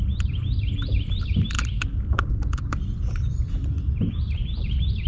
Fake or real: fake